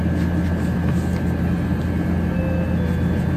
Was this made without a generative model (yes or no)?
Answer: yes